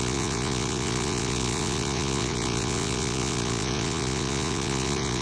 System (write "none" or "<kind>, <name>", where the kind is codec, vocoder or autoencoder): vocoder, Vocos